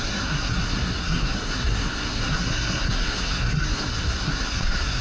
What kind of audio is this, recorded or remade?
remade